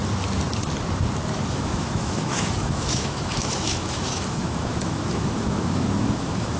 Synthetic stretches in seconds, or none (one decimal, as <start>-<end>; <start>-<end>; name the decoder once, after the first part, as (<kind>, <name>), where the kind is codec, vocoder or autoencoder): 1.5-6.6 (autoencoder, DAC-VAE)